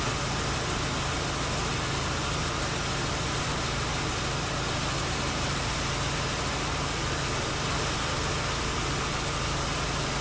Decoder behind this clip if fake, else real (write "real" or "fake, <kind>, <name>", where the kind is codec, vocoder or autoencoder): real